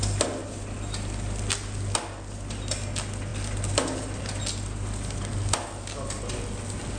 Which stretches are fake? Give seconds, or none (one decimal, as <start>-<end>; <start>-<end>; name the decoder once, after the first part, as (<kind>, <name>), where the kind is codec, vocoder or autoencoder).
none